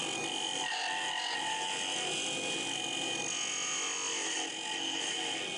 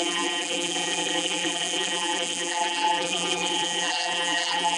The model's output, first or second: second